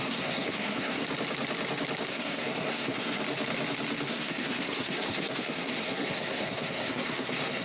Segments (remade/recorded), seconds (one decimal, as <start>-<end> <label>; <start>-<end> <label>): 0.0-1.0 remade; 1.0-2.1 recorded; 2.1-3.2 remade; 3.2-4.1 recorded; 4.1-7.6 remade